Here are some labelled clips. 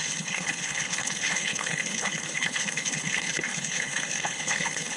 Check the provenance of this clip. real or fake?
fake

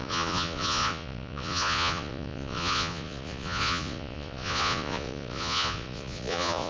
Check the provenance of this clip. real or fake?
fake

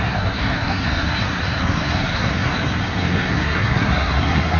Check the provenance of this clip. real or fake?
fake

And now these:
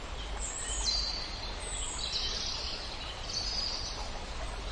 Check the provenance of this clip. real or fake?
real